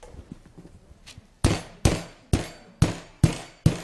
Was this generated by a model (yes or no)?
no